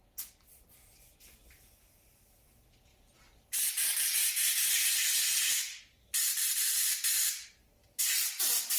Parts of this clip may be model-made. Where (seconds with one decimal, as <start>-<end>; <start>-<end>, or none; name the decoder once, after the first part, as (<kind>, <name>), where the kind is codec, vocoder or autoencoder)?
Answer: 2.9-8.0 (vocoder, BigVGAN v2)